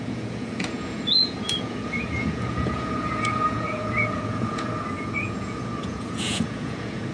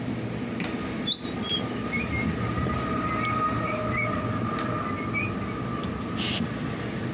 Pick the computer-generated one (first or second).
first